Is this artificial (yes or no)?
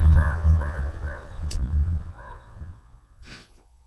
yes